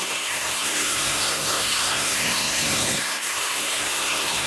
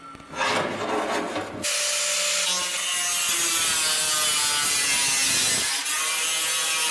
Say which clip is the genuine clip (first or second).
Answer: second